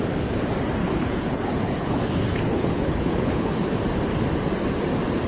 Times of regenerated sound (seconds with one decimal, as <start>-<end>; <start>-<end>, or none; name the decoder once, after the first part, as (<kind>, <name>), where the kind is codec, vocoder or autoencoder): 0.8-3.7 (codec, HILCodec)